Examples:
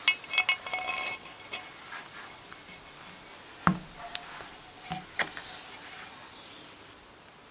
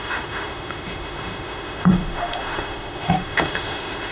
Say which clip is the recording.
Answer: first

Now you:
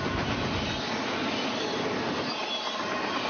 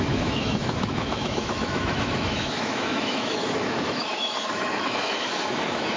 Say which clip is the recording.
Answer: first